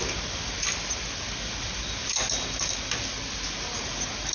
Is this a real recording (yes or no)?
yes